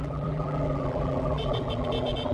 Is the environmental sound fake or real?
fake